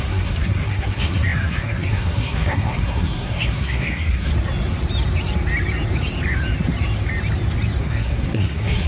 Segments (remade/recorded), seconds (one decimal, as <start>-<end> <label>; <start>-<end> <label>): 0.0-4.3 remade; 4.3-7.8 recorded; 7.8-8.9 remade